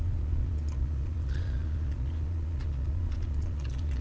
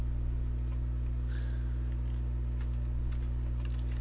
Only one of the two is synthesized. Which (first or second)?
first